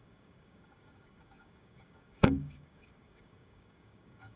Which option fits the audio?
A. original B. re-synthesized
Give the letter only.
B